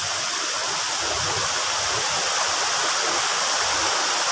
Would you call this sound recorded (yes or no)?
yes